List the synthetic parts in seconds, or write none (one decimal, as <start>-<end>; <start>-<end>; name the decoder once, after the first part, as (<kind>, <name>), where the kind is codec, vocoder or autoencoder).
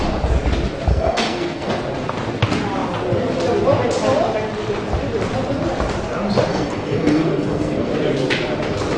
0.9-1.7 (codec, SNAC); 6.5-7.9